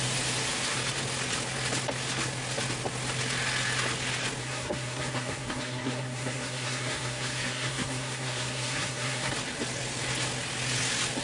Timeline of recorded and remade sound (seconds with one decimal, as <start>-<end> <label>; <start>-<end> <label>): 0.0-4.4 recorded; 4.4-9.3 remade; 9.3-11.2 recorded